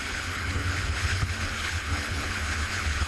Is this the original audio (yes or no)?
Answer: no